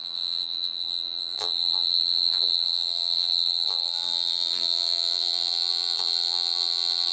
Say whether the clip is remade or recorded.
remade